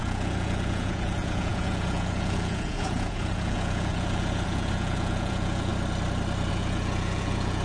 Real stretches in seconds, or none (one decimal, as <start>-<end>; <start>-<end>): 5.7-6.5